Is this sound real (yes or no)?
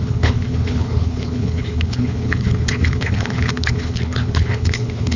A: no